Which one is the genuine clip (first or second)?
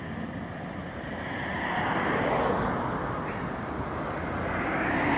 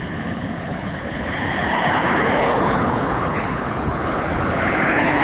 first